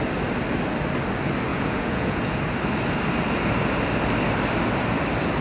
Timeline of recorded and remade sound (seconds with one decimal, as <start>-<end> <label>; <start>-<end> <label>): 0.0-1.5 recorded; 1.5-2.4 remade; 2.4-5.4 recorded